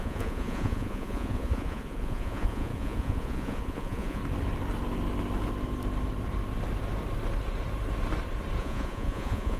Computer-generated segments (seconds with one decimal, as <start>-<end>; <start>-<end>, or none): 0.0-4.2; 8.6-9.6